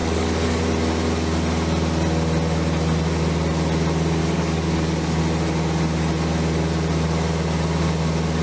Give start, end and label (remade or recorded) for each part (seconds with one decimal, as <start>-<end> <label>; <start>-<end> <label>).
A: 0.0-0.6 remade; 0.6-4.2 recorded; 4.2-5.2 remade; 5.2-8.4 recorded